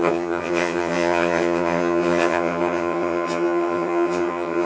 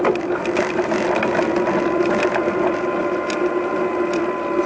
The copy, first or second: first